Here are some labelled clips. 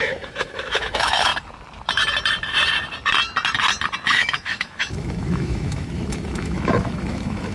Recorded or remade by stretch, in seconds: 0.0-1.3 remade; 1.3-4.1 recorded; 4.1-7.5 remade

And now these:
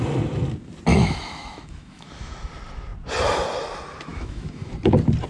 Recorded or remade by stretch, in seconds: 0.0-0.9 recorded; 0.9-2.5 remade; 2.5-4.1 recorded; 4.1-4.7 remade; 4.7-5.3 recorded

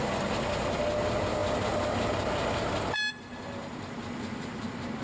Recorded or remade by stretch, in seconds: 0.0-5.0 recorded